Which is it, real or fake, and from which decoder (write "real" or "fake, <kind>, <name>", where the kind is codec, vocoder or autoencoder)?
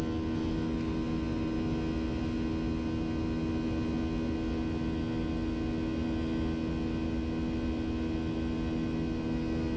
real